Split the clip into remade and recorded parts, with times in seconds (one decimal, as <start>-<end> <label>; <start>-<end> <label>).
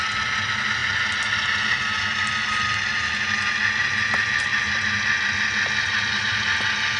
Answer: 0.0-7.0 recorded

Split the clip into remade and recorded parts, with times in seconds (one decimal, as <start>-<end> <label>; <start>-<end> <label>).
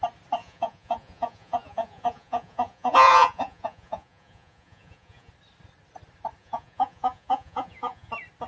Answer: 0.0-0.4 recorded; 0.4-5.3 remade; 5.3-6.4 recorded; 6.4-8.1 remade; 8.1-8.5 recorded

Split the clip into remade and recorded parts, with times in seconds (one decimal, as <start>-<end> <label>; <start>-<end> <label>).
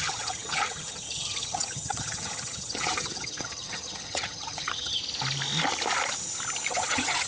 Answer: 0.0-5.0 remade; 5.0-6.7 recorded; 6.7-7.3 remade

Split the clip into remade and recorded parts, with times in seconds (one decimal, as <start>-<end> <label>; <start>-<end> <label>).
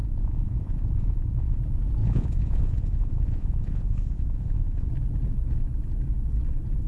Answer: 0.0-1.6 remade; 1.6-2.0 recorded; 2.0-4.9 remade; 4.9-6.9 recorded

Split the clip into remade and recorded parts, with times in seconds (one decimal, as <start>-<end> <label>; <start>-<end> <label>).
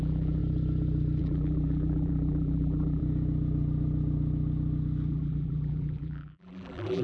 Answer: 0.0-0.4 remade; 0.4-1.2 recorded; 1.2-3.0 remade; 3.0-5.1 recorded; 5.1-7.0 remade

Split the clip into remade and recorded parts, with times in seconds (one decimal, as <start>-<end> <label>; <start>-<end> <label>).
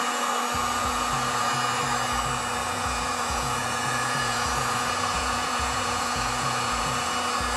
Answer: 0.0-0.8 recorded; 0.8-1.5 remade; 1.5-2.6 recorded; 2.6-7.1 remade; 7.1-7.6 recorded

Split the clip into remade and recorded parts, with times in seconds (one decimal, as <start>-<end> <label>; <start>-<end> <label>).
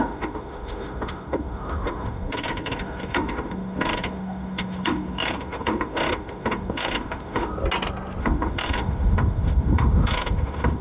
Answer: 0.0-7.5 remade; 7.5-8.2 recorded; 8.2-10.8 remade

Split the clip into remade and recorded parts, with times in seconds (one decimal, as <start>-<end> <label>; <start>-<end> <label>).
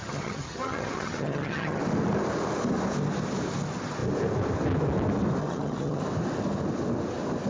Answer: 0.0-1.8 remade; 1.8-5.4 recorded; 5.4-6.0 remade; 6.0-7.5 recorded